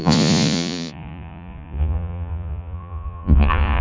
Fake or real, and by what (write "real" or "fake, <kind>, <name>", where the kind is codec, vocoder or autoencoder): fake, vocoder, Vocos